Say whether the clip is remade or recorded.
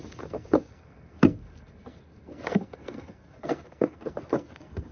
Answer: remade